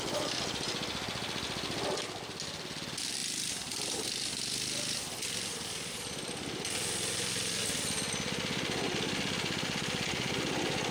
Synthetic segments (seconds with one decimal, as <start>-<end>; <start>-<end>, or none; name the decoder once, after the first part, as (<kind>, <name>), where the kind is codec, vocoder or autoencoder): none